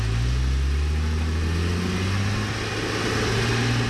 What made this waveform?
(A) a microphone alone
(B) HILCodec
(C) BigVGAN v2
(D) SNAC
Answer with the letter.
A